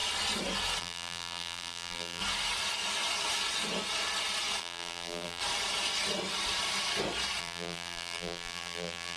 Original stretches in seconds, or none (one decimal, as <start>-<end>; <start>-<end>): 0.0-0.8; 2.2-4.6; 5.4-7.4